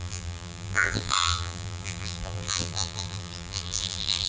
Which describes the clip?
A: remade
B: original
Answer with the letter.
A